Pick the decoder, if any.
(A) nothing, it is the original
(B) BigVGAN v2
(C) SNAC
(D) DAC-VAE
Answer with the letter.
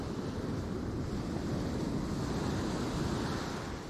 A